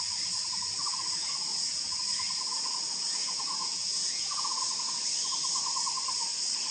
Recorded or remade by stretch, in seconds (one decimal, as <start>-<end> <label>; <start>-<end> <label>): 0.0-1.5 recorded; 1.5-2.0 remade; 2.0-3.2 recorded; 3.2-4.6 remade; 4.6-6.7 recorded